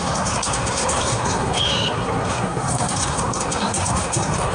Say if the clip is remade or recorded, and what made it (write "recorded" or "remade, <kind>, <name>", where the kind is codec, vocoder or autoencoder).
remade, codec, SNAC